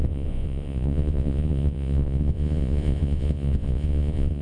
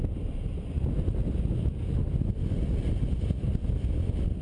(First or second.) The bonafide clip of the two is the second